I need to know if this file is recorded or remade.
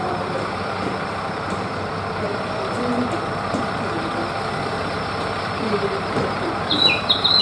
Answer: remade